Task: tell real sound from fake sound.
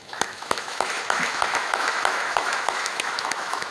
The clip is fake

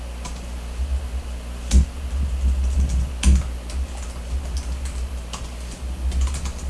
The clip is real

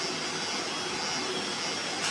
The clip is real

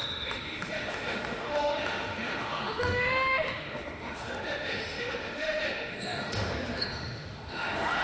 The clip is fake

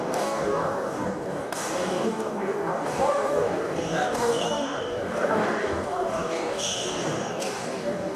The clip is fake